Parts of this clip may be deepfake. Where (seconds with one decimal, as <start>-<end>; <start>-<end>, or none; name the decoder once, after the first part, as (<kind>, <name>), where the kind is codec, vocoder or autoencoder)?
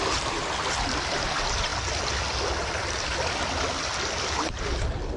none